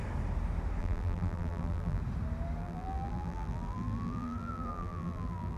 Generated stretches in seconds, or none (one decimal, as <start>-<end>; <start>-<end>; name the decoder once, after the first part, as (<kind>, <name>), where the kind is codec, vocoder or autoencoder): 0.8-2.0 (vocoder, BigVGAN v2); 2.6-5.6